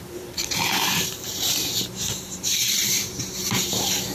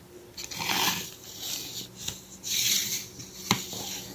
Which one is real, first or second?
second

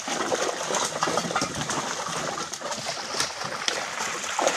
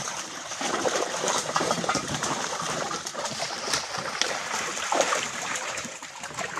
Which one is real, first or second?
first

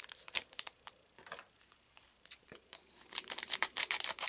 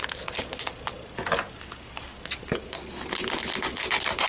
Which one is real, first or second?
second